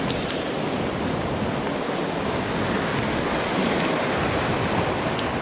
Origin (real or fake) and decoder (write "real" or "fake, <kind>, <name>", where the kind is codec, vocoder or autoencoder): real